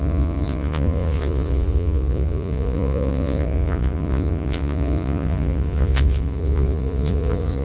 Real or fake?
fake